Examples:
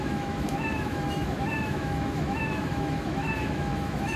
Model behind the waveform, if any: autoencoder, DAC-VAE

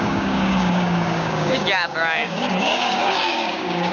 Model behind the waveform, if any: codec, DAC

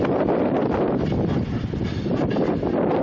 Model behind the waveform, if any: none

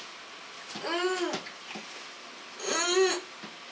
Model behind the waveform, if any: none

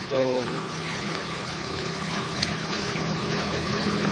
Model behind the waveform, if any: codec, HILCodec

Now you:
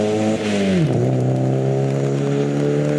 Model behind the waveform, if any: none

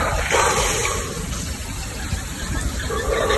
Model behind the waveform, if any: vocoder, BigVGAN v2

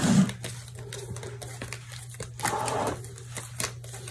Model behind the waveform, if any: none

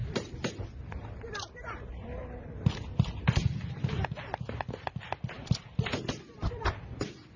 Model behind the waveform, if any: none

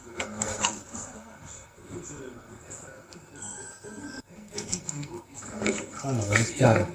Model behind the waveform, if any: codec, SNAC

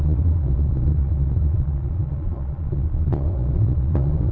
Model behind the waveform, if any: vocoder, Vocos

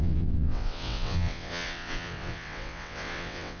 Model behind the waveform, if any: vocoder, WaveNeXt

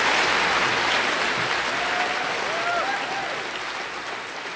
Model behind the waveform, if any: none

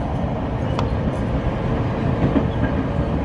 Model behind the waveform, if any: none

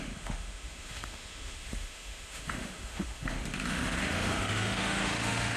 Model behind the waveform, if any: autoencoder, DAC-VAE